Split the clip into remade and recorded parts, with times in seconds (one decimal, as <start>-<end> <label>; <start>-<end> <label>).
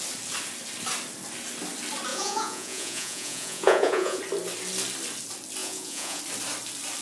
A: 0.0-2.1 recorded; 2.1-4.2 remade; 4.2-5.6 recorded; 5.6-6.2 remade; 6.2-7.0 recorded